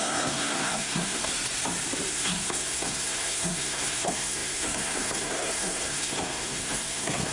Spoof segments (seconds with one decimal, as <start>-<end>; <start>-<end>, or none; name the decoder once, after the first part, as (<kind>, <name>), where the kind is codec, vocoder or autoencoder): 0.0-1.3 (codec, SNAC); 2.1-7.3